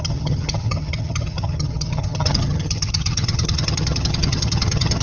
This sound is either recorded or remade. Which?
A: remade